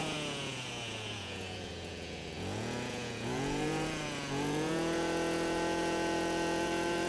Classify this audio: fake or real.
fake